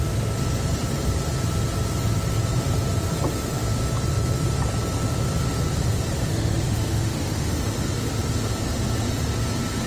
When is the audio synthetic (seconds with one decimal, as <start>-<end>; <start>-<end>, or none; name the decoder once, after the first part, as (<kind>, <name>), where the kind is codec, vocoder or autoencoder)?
6.3-7.5 (autoencoder, DAC-VAE)